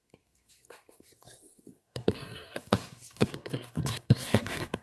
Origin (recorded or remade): remade